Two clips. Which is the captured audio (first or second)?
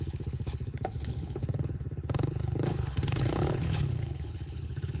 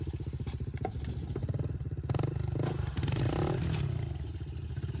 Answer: second